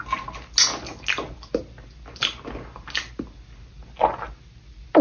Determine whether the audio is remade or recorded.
recorded